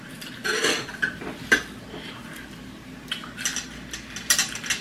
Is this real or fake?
real